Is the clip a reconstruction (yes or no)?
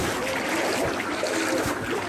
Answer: no